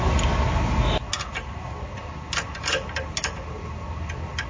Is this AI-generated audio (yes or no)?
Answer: no